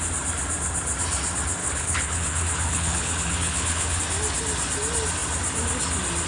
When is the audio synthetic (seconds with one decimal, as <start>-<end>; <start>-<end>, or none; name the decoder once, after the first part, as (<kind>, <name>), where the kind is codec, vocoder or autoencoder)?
1.6-4.0 (codec, HILCodec)